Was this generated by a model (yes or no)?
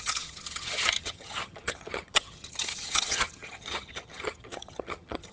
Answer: yes